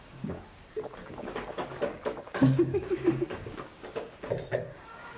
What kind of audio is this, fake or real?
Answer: fake